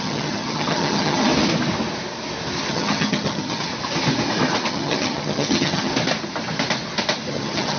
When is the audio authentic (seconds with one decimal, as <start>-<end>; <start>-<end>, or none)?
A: 1.3-2.7; 3.7-4.7; 5.9-7.3